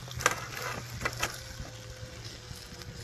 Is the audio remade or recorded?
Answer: recorded